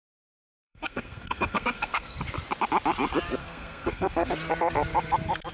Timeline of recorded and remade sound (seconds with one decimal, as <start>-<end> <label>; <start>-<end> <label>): 0.0-2.2 remade; 2.2-3.4 recorded; 3.4-4.3 remade; 4.3-5.5 recorded